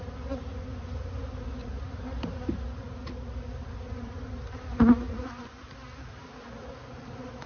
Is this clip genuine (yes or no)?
yes